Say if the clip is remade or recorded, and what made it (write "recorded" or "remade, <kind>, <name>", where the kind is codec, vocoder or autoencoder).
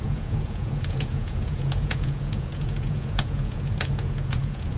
remade, vocoder, Vocos